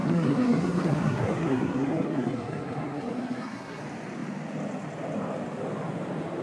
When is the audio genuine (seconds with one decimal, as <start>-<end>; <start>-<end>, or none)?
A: 3.8-6.4